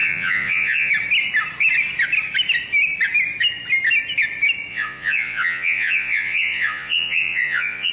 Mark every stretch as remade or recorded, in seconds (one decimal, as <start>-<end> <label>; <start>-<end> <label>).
0.0-0.9 remade; 0.9-4.7 recorded; 4.7-7.9 remade